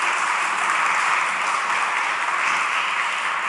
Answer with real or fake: real